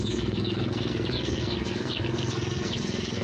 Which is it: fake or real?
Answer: fake